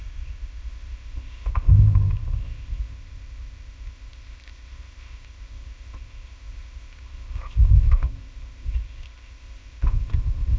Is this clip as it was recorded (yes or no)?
no